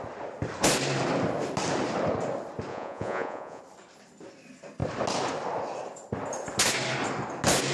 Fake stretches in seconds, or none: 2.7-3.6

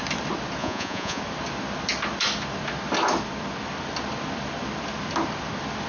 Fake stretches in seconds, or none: 0.6-1.2